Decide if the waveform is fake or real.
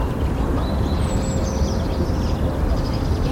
real